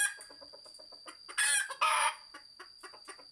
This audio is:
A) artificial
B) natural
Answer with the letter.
B